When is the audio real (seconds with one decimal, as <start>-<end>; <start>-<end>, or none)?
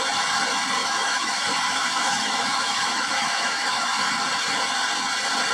0.0-0.8; 4.1-5.5